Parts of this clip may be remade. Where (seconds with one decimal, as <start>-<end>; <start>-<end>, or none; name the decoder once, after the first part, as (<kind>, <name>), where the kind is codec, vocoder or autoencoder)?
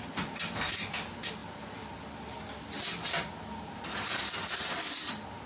none